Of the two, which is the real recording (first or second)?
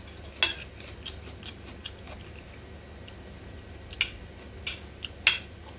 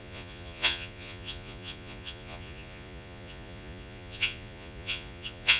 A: first